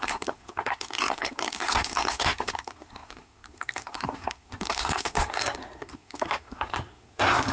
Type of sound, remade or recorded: remade